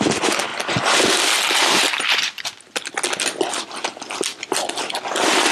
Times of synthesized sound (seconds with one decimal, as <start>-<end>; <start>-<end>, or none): none